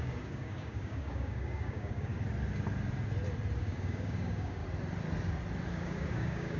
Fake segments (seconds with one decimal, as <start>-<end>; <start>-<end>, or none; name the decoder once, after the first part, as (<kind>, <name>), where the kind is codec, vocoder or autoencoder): 0.0-2.1 (codec, DAC); 3.6-4.6; 5.7-6.6